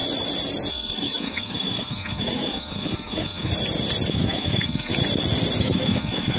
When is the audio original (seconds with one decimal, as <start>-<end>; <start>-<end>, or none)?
0.0-0.7; 3.5-4.1; 4.9-5.6